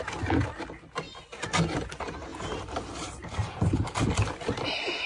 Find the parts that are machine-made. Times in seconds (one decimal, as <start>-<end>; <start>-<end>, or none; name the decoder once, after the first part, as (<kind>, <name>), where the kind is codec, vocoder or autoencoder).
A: 2.3-4.0 (vocoder, BigVGAN v2)